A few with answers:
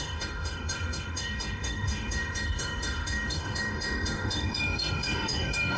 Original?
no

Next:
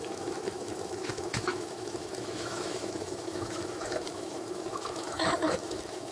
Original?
no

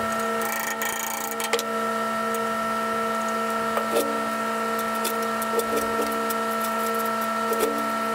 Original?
yes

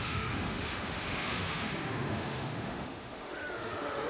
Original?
no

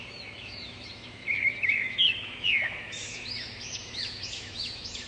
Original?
no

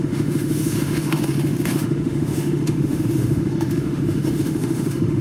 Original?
no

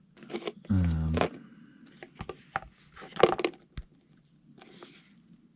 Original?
yes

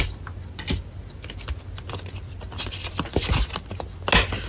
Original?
yes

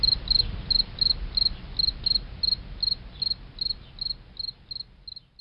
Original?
yes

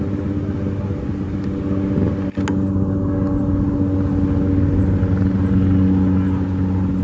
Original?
yes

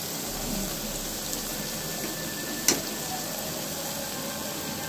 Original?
yes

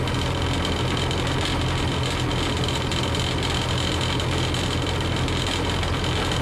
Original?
yes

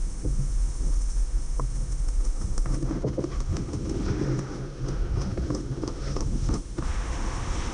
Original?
no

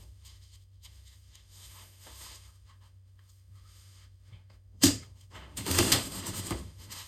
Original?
no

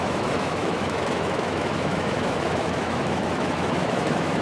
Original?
no